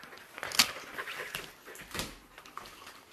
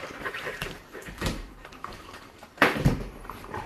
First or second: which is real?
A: first